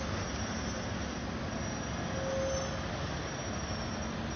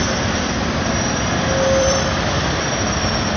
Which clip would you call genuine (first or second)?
first